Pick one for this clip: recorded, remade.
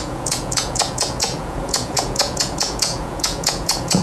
remade